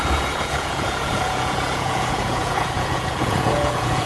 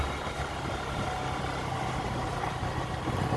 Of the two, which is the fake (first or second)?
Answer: first